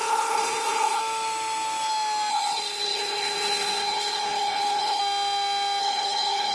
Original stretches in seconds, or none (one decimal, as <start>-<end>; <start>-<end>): 1.0-2.3; 5.0-5.8